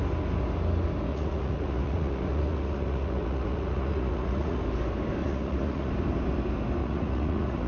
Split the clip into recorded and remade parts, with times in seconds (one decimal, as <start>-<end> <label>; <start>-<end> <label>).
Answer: 0.0-1.1 recorded; 1.1-4.6 remade; 4.6-5.2 recorded; 5.2-5.9 remade; 5.9-6.8 recorded; 6.8-7.7 remade